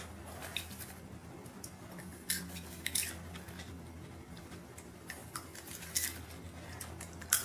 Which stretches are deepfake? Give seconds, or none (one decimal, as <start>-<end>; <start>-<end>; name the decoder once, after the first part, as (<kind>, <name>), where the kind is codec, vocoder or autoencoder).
none